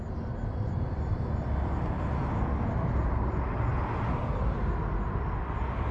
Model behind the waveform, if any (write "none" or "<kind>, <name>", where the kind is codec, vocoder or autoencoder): none